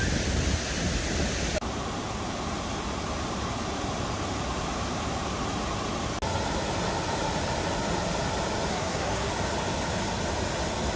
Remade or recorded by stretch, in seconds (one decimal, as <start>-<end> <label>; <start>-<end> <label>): 0.0-8.7 recorded; 8.7-9.3 remade; 9.3-11.0 recorded